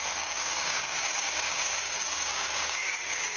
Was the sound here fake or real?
fake